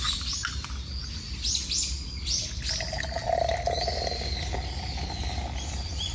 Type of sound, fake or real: real